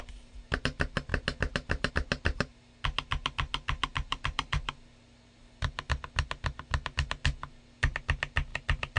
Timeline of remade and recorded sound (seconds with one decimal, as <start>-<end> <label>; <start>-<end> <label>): 0.0-3.9 recorded; 3.9-4.6 remade; 4.6-8.5 recorded; 8.5-9.0 remade